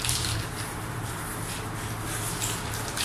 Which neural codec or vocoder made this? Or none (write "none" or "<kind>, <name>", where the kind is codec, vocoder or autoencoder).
none